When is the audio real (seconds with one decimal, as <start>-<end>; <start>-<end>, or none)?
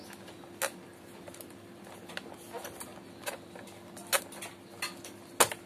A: 0.0-5.7